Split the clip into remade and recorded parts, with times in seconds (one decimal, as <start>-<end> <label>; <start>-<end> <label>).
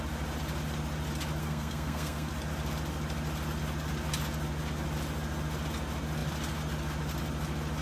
0.0-1.4 recorded; 1.4-2.3 remade; 2.3-7.8 recorded